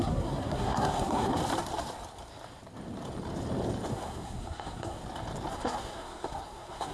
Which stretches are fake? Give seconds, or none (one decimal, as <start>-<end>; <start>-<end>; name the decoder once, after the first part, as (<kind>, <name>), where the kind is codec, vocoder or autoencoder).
0.0-1.4 (codec, SNAC); 3.9-5.0; 5.5-6.9